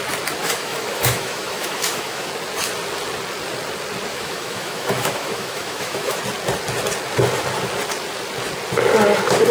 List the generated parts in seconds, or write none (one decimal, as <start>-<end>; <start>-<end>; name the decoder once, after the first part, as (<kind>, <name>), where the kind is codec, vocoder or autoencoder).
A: 0.4-2.3 (autoencoder, DAC-VAE); 4.1-6.2